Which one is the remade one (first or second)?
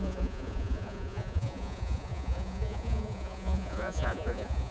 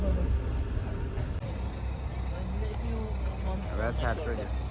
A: first